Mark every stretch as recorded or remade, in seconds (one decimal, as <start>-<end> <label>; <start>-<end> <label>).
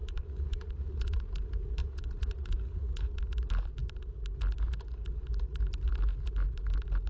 0.0-1.3 remade; 1.3-1.8 recorded; 1.8-3.2 remade; 3.2-7.1 recorded